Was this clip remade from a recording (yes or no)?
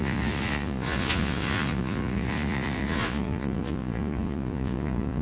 yes